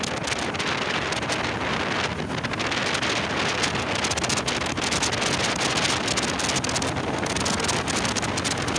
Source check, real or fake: real